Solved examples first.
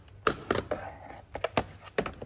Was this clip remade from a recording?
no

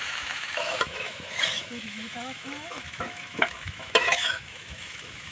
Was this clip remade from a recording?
yes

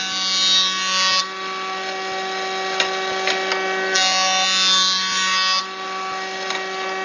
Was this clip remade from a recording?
no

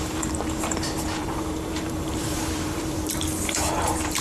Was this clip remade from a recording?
yes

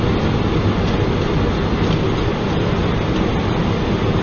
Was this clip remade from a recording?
no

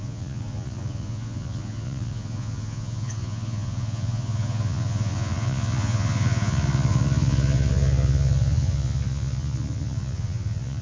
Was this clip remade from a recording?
yes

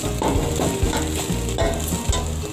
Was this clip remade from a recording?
no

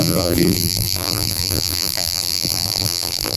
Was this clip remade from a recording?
yes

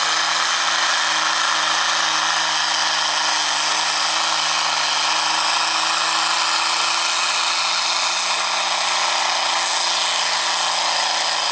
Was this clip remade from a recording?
no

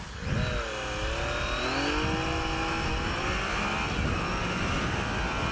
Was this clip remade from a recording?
no